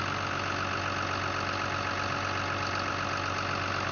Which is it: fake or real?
real